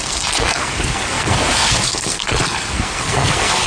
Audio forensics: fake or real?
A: fake